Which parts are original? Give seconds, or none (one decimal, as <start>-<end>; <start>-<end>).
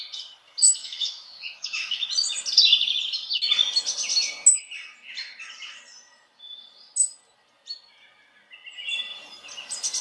0.0-0.8; 2.1-10.0